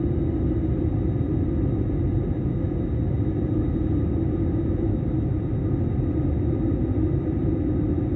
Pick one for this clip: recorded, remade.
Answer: recorded